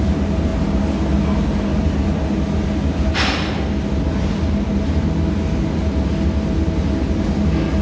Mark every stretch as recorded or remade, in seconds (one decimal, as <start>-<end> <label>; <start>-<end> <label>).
0.0-7.8 recorded